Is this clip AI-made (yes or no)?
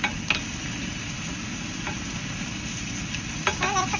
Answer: no